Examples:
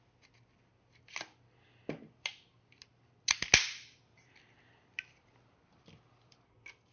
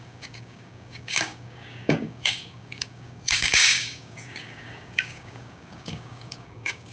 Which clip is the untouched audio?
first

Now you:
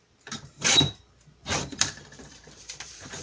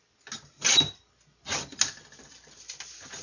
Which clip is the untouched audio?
second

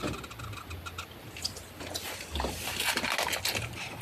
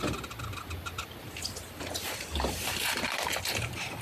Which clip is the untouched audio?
first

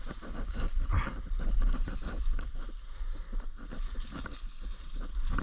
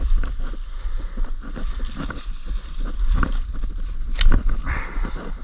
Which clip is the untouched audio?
second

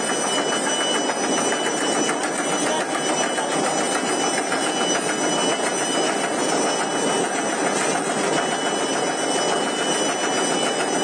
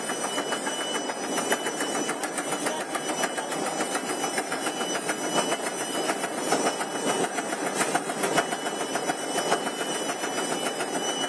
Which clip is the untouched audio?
first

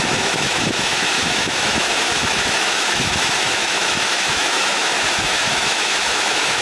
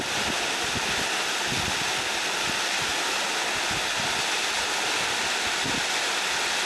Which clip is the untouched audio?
second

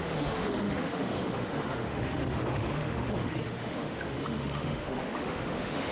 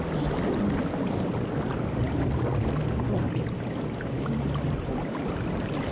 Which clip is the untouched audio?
second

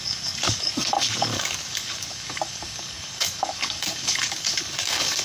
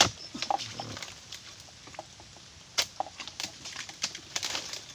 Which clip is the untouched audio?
second